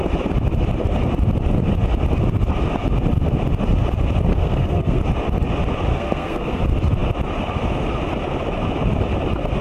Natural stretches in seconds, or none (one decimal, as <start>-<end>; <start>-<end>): 0.0-4.3; 5.0-5.9; 6.6-9.6